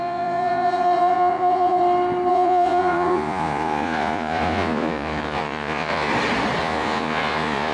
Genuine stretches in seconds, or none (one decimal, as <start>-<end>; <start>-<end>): 1.8-2.3; 6.1-6.6